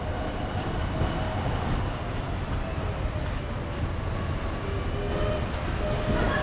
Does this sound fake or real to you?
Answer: real